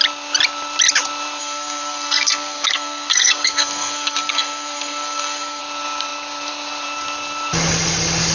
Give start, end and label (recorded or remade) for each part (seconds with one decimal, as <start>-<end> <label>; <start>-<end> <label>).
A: 0.0-1.4 recorded; 1.4-5.6 remade; 5.6-8.3 recorded